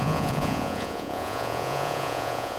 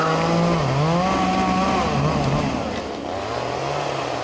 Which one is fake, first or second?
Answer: first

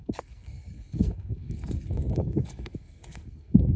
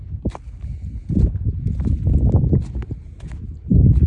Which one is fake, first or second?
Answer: first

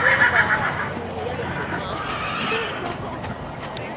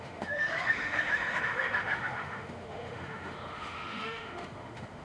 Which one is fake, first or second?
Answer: second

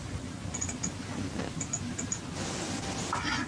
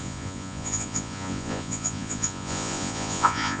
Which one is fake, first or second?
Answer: second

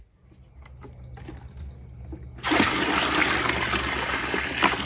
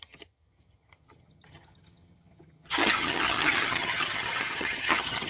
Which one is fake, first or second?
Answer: second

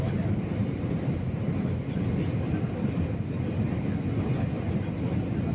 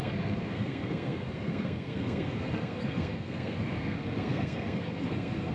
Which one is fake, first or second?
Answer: second